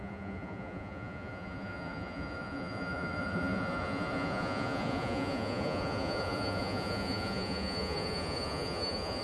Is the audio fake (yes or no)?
yes